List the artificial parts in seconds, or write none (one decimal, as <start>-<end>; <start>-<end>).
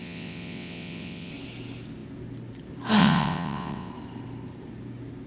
0.0-1.3; 3.0-3.9